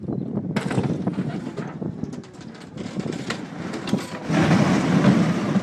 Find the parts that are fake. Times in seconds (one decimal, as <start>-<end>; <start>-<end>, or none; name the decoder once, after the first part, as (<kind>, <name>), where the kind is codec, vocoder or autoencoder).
none